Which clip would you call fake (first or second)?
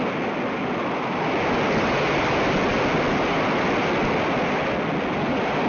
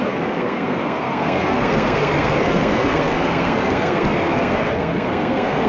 second